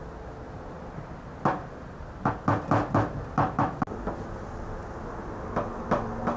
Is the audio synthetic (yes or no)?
no